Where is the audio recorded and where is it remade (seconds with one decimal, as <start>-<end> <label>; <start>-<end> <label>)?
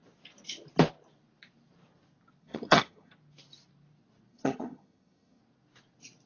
0.0-2.4 recorded; 2.4-3.1 remade; 3.1-4.3 recorded; 4.3-5.4 remade; 5.4-6.3 recorded